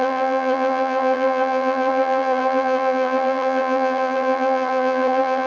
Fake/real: fake